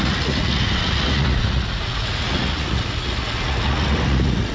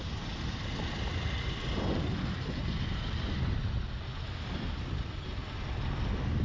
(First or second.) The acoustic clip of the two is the second